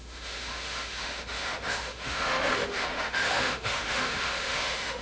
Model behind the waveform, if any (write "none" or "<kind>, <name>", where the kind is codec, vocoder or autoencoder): autoencoder, DAC-VAE